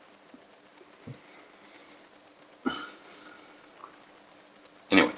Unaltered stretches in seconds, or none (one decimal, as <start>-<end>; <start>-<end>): 0.0-5.2